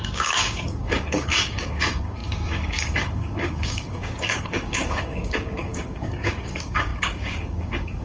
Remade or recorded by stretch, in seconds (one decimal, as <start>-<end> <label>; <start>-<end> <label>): 0.0-8.0 remade